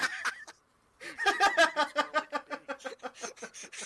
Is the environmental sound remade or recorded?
recorded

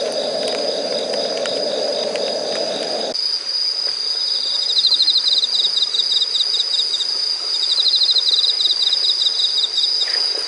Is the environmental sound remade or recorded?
recorded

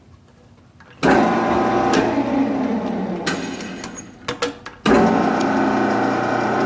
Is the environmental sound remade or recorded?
recorded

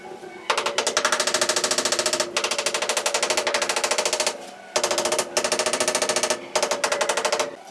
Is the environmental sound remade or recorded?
recorded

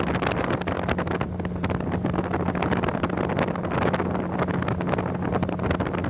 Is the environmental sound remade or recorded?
recorded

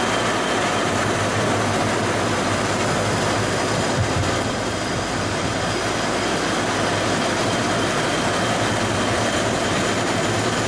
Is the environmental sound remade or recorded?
recorded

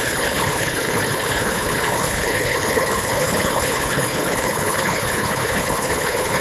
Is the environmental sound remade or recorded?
remade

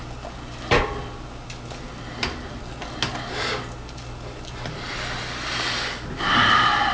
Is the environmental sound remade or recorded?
recorded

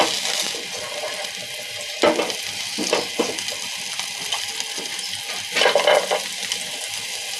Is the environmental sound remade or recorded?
recorded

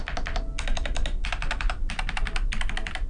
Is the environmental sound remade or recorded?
recorded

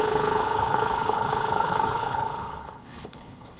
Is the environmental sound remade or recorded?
remade